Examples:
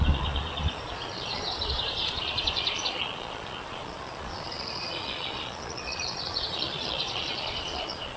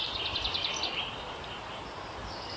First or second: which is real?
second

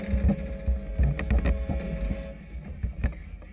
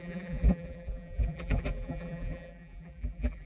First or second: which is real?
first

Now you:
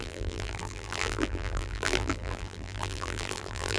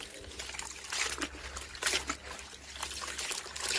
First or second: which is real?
second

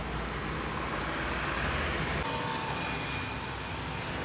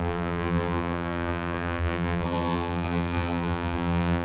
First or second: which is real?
first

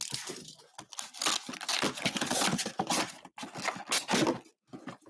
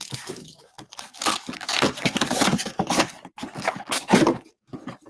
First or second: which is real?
first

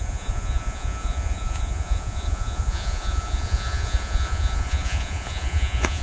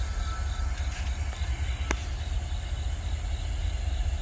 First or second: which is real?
second